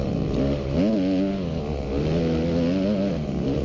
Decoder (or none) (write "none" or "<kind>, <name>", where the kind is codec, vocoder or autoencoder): none